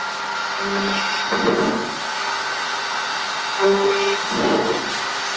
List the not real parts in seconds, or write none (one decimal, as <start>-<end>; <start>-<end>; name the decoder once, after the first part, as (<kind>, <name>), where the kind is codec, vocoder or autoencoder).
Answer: none